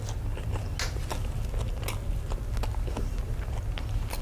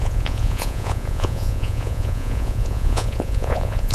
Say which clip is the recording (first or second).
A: first